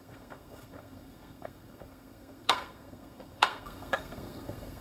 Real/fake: fake